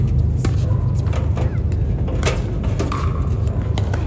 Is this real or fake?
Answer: real